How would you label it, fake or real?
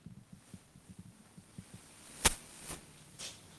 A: real